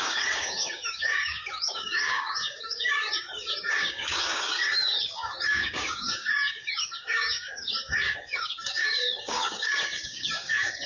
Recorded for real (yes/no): no